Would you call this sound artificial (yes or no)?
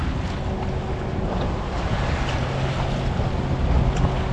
no